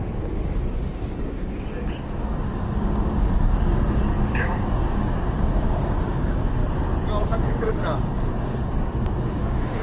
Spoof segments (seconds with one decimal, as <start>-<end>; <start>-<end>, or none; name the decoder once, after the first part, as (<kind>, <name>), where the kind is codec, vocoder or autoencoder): 0.0-6.6 (codec, DAC); 7.2-9.8